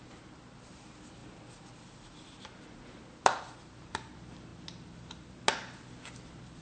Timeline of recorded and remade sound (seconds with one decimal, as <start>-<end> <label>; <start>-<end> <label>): 0.0-6.6 recorded